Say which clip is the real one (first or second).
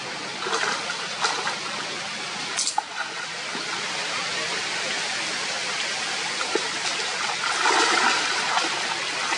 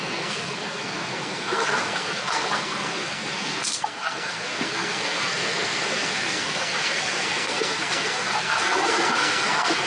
first